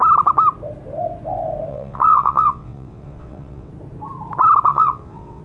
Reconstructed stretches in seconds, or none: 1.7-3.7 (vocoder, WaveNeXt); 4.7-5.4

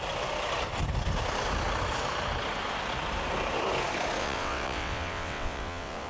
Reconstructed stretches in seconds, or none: 4.2-6.1 (vocoder, WaveNeXt)

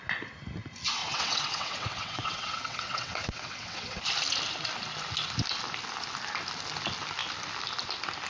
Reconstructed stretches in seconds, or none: 1.0-4.0 (vocoder, WaveNeXt)

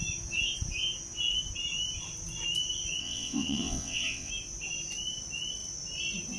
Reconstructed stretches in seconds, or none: 3.0-4.3 (vocoder, WaveNeXt)

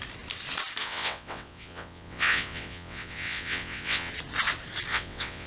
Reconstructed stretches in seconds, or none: 0.8-4.1 (vocoder, WaveNeXt); 4.9-5.5

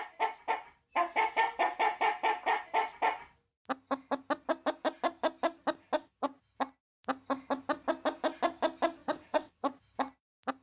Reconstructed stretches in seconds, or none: 9.0-9.7 (vocoder, WaveNeXt)